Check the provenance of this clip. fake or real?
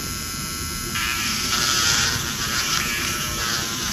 fake